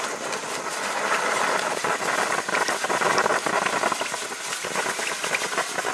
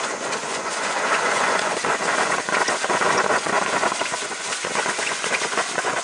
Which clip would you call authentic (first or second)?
first